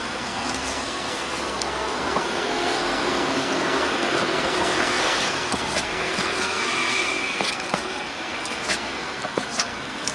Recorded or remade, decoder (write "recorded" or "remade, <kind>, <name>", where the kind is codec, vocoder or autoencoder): remade, codec, SNAC